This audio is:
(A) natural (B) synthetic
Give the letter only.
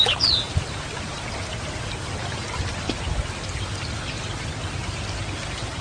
A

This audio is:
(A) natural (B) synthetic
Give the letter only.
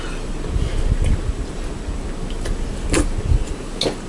A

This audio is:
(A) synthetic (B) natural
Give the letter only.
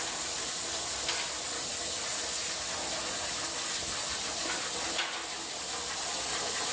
B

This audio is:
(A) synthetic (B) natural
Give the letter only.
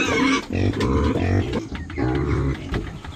B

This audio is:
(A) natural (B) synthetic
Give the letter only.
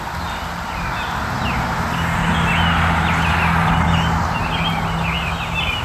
A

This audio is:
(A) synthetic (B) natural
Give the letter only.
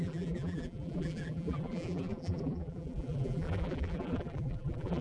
A